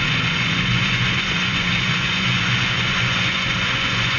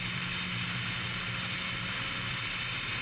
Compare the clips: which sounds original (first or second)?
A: second